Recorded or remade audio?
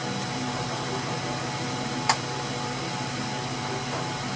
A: recorded